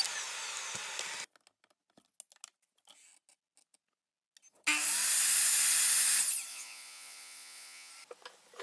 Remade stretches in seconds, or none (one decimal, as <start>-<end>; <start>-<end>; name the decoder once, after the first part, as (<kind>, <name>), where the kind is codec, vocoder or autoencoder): 6.5-7.9 (vocoder, Vocos)